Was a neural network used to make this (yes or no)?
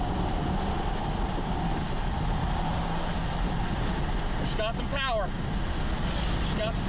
no